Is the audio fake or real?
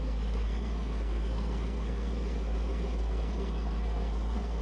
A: fake